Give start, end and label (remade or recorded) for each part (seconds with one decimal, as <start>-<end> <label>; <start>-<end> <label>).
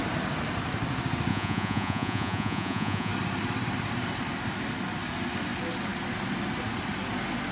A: 0.0-1.3 recorded; 1.3-3.1 remade; 3.1-7.5 recorded